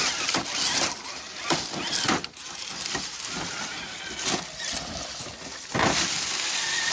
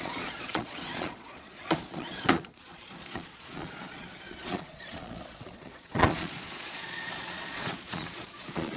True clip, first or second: first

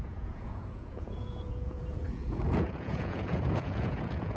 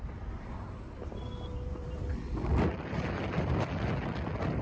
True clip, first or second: second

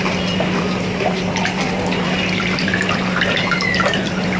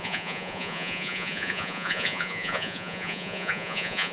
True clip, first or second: first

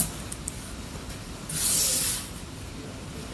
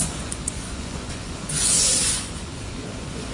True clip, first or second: first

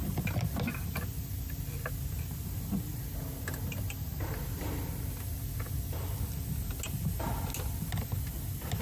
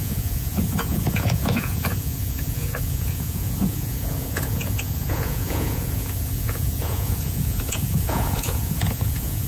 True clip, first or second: first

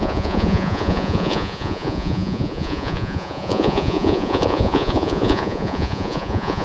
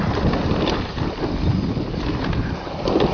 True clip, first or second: second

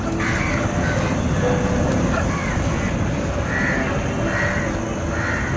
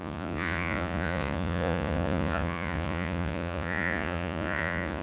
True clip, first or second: first